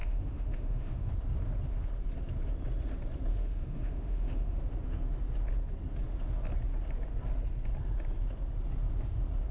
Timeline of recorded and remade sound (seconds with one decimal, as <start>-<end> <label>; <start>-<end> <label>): 0.0-1.1 remade; 1.1-3.3 recorded; 3.3-4.6 remade; 4.6-9.5 recorded